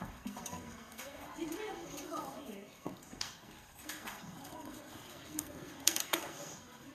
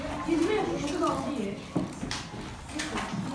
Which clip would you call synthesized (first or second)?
first